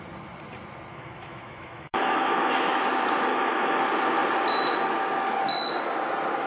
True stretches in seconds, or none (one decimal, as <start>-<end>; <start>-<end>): 0.0-0.9; 2.8-3.3; 3.8-6.5